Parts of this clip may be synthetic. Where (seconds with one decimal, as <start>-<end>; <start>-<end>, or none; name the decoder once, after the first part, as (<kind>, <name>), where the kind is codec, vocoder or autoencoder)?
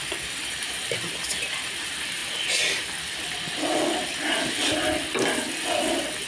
0.0-2.2 (vocoder, BigVGAN v2)